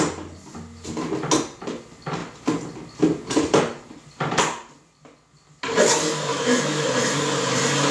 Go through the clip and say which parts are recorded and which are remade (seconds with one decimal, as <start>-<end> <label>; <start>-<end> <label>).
0.0-6.3 recorded; 6.3-6.9 remade; 6.9-7.9 recorded